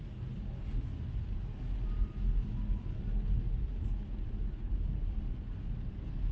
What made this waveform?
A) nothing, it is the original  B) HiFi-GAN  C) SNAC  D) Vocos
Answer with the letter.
A